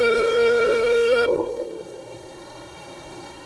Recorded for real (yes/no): no